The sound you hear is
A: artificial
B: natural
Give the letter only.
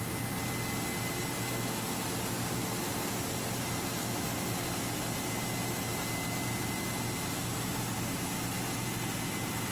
B